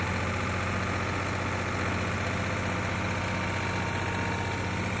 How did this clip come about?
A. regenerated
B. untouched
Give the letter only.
B